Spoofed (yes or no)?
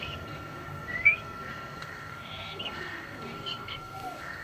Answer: yes